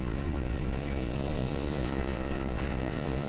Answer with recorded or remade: remade